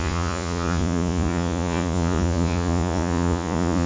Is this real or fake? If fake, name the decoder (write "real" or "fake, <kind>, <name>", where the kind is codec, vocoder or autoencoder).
fake, vocoder, Vocos